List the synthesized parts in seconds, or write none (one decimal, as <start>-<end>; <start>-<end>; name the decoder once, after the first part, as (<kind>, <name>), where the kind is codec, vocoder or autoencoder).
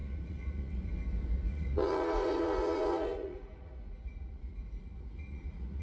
0.0-0.9 (vocoder, Vocos); 1.5-5.8